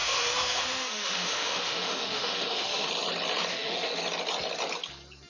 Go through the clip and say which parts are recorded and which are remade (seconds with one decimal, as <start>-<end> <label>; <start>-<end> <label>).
0.0-2.9 remade; 2.9-3.5 recorded; 3.5-4.0 remade; 4.0-5.3 recorded

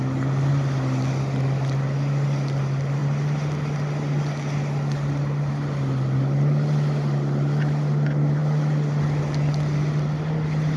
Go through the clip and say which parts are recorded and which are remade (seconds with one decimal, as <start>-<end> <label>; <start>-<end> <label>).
0.0-10.8 recorded